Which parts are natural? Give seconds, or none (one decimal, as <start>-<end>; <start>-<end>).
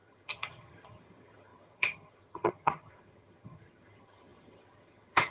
none